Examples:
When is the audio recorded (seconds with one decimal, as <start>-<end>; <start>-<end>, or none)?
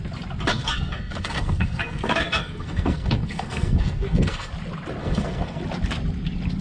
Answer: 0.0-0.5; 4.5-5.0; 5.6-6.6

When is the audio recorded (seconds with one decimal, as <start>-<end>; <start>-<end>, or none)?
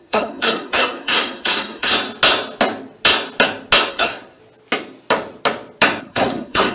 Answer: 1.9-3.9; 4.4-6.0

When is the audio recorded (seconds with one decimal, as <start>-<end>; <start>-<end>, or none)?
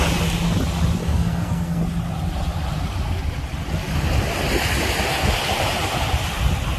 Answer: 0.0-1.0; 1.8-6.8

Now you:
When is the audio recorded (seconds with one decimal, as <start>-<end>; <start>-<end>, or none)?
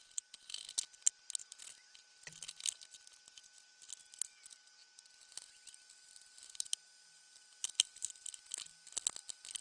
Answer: 0.0-9.6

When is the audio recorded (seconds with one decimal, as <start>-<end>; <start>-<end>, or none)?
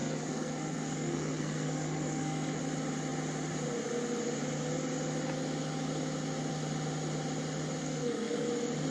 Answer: 2.6-7.8; 8.5-8.9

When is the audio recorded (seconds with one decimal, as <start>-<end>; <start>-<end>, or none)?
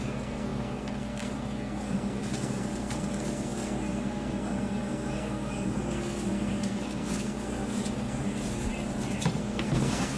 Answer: 8.7-9.4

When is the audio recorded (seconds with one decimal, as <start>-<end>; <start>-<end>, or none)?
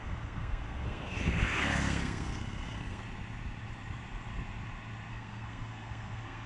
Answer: 3.0-5.1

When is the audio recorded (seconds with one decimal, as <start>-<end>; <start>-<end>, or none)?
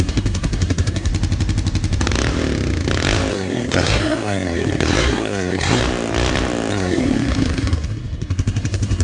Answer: 1.1-3.3; 5.8-6.7